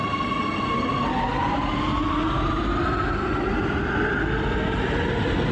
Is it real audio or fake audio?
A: real